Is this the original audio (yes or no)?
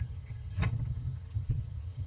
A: no